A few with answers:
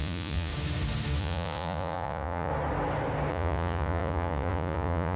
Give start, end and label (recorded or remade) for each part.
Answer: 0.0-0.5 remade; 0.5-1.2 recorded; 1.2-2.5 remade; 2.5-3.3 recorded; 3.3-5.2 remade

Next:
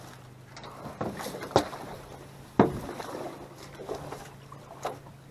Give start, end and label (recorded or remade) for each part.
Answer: 0.0-5.3 recorded

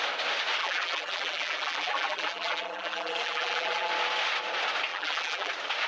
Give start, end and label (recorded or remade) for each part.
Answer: 0.0-0.6 recorded; 0.6-3.9 remade; 3.9-4.9 recorded; 4.9-5.5 remade; 5.5-5.9 recorded

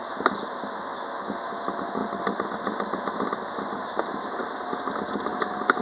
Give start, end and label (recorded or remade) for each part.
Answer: 0.0-5.8 recorded

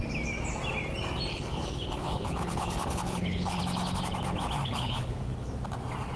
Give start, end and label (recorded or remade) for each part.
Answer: 0.0-1.3 recorded; 1.3-3.6 remade; 3.6-4.6 recorded; 4.6-5.5 remade; 5.5-6.2 recorded

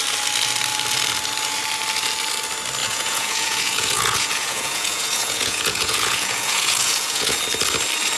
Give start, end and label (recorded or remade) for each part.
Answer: 0.0-2.8 recorded; 2.8-7.4 remade; 7.4-8.2 recorded